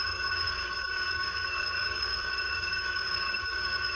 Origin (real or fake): fake